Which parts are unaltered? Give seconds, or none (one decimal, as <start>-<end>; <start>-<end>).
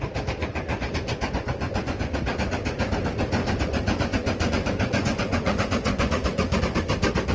0.0-0.4; 2.2-3.4; 6.6-7.3